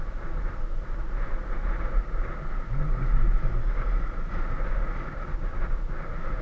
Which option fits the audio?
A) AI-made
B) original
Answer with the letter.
B